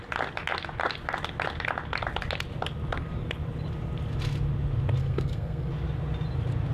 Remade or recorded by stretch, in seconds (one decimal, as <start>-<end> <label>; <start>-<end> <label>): 0.0-5.0 recorded; 5.0-5.7 remade; 5.7-6.7 recorded